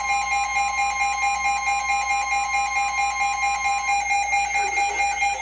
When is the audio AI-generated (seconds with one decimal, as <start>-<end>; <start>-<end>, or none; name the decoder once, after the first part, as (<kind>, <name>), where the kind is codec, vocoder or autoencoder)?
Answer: none